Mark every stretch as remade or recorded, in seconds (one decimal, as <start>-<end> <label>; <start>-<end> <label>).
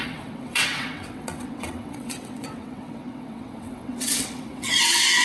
0.0-5.2 remade